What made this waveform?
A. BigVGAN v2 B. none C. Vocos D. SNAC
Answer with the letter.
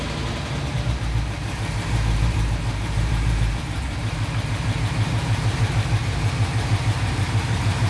A